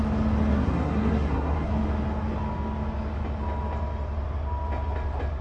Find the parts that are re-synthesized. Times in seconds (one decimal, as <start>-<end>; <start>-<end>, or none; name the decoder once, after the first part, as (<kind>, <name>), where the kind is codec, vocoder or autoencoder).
0.5-1.7 (codec, SNAC)

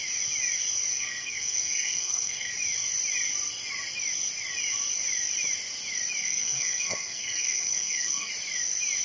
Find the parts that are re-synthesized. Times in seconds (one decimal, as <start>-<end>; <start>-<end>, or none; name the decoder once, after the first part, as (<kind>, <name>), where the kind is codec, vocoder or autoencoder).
0.9-2.5 (codec, SNAC); 6.2-8.3

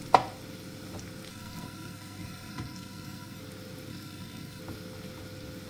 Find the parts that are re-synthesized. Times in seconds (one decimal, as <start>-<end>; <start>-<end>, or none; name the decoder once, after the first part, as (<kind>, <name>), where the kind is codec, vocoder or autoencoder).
1.3-3.4 (codec, SNAC); 3.9-4.6